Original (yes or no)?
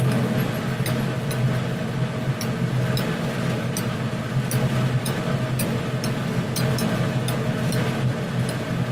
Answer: yes